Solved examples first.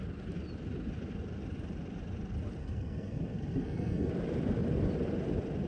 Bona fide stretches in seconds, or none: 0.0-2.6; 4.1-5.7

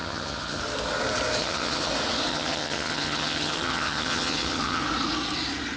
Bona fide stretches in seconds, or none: 0.6-1.4; 1.9-2.3; 4.8-5.8

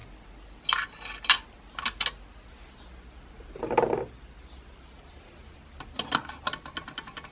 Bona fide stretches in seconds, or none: 0.0-7.3

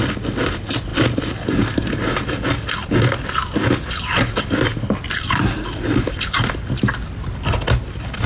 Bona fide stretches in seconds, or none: 0.0-8.3

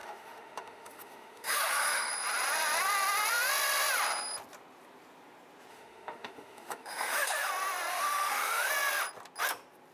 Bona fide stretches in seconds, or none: 2.1-5.7; 7.5-7.9; 8.7-9.9

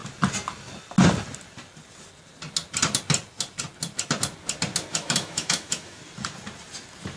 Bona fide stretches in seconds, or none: 0.0-4.9; 6.0-7.2

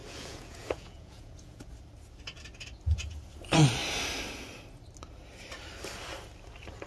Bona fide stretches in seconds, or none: 1.6-6.9